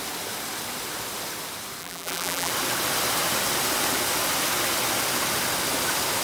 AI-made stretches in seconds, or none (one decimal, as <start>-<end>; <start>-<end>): 1.8-2.5